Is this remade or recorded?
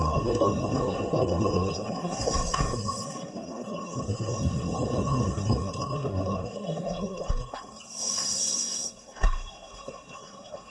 remade